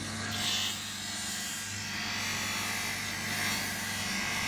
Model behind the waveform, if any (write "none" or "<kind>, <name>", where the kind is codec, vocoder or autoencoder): none